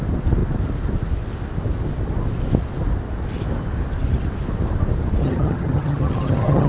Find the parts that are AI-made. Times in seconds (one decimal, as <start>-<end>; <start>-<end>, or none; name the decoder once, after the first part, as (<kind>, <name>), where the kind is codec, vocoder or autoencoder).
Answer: 5.2-6.7 (vocoder, HiFi-GAN)